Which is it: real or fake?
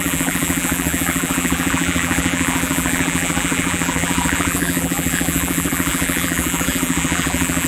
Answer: fake